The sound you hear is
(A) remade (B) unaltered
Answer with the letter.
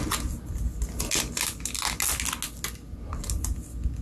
B